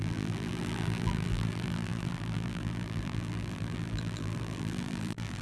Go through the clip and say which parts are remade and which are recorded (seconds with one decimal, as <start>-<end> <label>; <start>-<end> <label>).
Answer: 0.0-5.4 remade